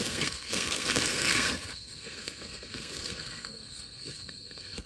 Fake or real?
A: fake